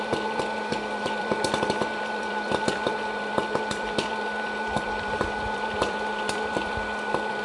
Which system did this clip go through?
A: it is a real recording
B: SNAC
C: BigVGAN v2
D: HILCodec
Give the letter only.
C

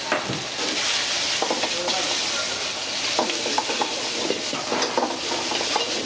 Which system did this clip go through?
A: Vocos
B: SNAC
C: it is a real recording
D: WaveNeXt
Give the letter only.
C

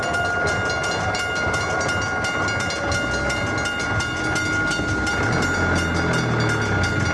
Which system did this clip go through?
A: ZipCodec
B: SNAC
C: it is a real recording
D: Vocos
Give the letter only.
C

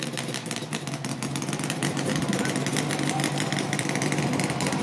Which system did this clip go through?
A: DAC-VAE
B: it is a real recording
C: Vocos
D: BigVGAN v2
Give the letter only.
B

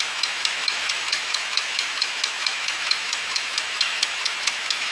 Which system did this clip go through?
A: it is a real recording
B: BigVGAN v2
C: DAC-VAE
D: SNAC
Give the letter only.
C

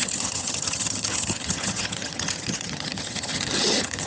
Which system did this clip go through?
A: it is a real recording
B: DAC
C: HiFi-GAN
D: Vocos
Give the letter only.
C